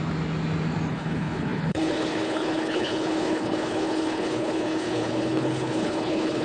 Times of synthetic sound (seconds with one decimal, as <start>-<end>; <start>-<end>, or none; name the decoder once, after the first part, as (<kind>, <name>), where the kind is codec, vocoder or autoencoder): 0.9-6.4 (codec, HILCodec)